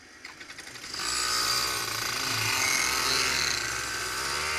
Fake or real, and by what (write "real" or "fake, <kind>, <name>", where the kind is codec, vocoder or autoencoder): real